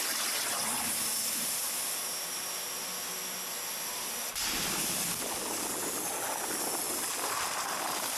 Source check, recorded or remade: recorded